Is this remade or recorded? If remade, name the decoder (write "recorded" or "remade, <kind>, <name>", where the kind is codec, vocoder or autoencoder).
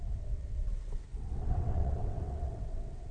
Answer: remade, vocoder, WaveNeXt